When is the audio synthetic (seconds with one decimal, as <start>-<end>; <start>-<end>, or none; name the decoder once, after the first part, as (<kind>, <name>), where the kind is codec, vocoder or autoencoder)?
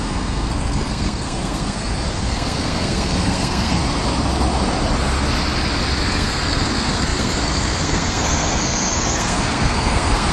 0.0-3.8 (codec, SNAC); 6.1-10.3